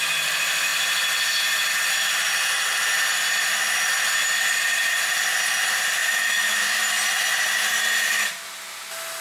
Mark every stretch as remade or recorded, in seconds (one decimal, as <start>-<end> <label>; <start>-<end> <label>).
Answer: 0.0-6.0 recorded; 6.0-6.8 remade; 6.8-9.2 recorded